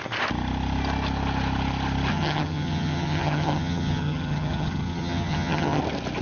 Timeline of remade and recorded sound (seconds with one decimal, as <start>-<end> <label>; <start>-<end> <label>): 0.0-2.1 recorded; 2.1-5.8 remade; 5.8-6.2 recorded